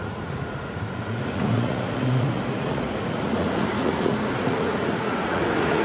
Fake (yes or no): yes